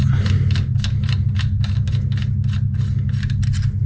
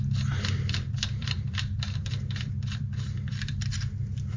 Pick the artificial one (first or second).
second